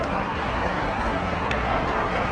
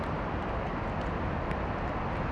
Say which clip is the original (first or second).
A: second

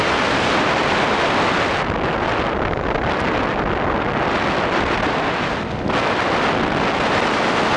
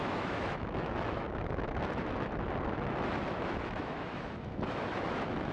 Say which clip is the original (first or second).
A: first